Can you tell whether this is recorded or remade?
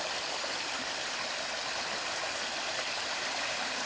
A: recorded